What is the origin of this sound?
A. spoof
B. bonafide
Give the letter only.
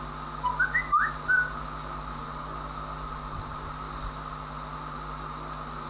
B